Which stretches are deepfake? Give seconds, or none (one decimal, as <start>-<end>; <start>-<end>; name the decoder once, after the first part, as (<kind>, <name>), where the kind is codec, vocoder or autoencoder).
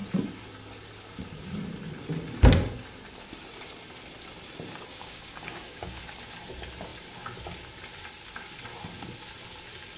4.9-6.0 (codec, DAC)